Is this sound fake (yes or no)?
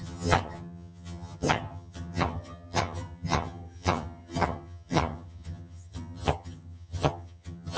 yes